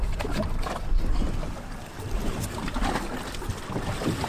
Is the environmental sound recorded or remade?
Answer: recorded